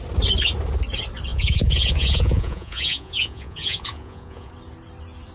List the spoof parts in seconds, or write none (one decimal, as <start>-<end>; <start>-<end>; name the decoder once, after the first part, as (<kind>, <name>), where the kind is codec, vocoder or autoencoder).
1.3-4.5 (vocoder, Vocos)